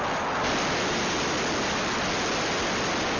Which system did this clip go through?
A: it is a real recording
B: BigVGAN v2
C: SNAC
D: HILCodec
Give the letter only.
A